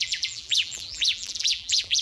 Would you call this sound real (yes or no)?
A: no